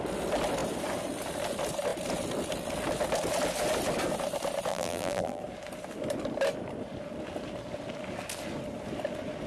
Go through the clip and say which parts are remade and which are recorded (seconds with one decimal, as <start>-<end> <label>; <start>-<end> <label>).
0.0-4.7 recorded; 4.7-5.4 remade; 5.4-9.5 recorded